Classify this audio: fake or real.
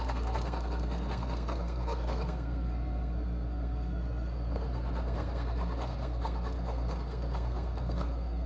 fake